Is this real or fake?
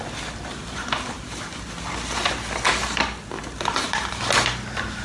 real